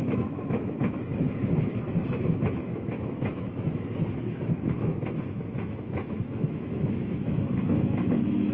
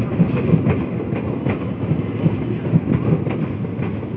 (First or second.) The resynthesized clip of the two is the first